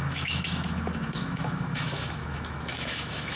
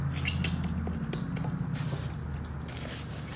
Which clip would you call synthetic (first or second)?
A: first